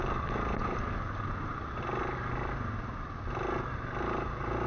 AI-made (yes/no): no